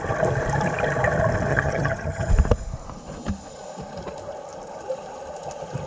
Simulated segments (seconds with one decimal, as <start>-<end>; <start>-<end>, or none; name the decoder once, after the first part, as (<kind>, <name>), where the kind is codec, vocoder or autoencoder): 1.5-2.3 (vocoder, HiFi-GAN)